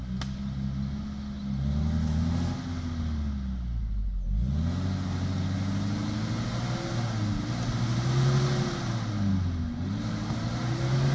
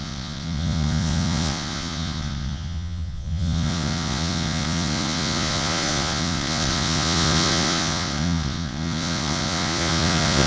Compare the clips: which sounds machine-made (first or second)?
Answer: second